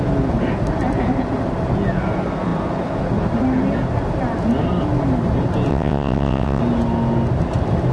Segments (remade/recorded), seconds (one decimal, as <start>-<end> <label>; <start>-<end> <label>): 0.0-5.7 recorded; 5.7-6.6 remade; 6.6-7.9 recorded